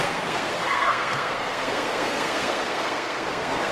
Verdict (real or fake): fake